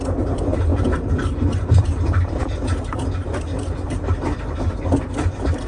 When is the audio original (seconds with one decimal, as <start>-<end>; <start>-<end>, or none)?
0.7-1.8